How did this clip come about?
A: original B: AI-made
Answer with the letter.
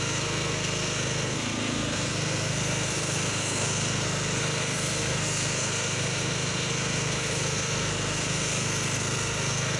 B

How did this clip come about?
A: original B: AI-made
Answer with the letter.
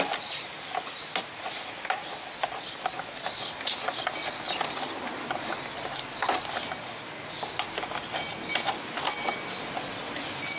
A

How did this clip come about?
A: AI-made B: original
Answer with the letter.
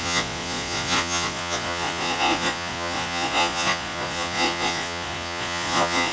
A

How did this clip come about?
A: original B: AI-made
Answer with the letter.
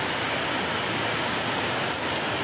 A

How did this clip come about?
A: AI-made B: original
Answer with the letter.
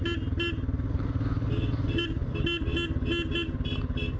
B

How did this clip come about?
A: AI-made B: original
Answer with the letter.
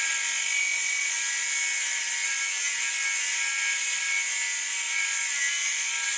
B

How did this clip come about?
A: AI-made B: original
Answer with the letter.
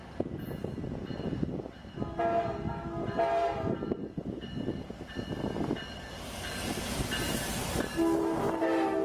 B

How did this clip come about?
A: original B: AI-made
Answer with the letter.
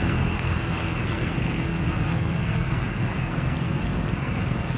B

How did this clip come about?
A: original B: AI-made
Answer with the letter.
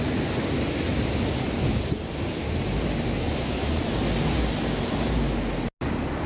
A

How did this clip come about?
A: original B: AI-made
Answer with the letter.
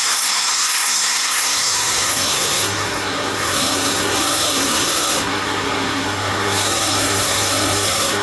B